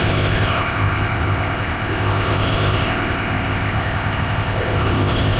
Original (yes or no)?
no